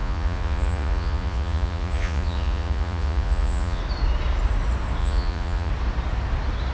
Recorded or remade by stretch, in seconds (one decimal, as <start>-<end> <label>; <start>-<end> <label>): 0.0-3.8 remade; 3.8-5.0 recorded; 5.0-5.7 remade; 5.7-6.7 recorded